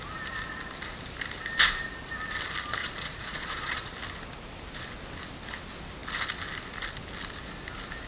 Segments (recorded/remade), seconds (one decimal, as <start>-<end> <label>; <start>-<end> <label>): 0.0-2.8 recorded; 2.8-3.9 remade; 3.9-8.1 recorded